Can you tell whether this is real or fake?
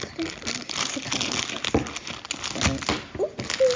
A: real